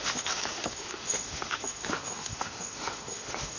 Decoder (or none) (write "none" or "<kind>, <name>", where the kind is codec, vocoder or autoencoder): autoencoder, DAC-VAE